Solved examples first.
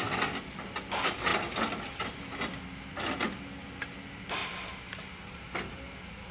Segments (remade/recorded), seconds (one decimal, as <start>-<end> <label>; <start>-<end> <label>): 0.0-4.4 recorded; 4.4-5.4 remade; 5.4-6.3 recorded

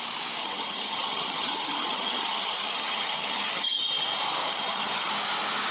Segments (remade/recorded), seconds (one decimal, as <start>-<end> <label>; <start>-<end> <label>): 0.0-0.4 recorded; 0.4-3.8 remade; 3.8-4.5 recorded; 4.5-5.1 remade; 5.1-5.7 recorded

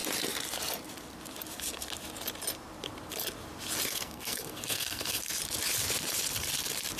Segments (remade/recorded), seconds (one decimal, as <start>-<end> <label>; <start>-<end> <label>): 0.0-3.9 recorded; 3.9-5.2 remade; 5.2-7.0 recorded

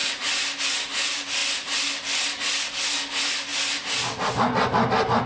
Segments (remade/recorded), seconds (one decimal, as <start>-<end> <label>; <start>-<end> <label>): 0.0-5.3 recorded

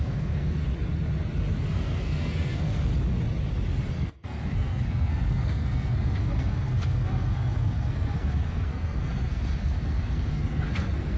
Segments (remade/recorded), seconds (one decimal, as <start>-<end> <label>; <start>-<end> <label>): 0.0-0.6 remade; 0.6-1.4 recorded; 1.4-2.9 remade; 2.9-3.9 recorded; 3.9-11.2 remade